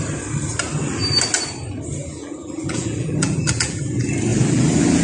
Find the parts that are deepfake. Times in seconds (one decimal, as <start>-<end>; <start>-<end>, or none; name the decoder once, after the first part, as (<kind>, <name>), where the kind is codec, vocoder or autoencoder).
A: 2.0-3.9 (vocoder, BigVGAN v2); 4.3-5.0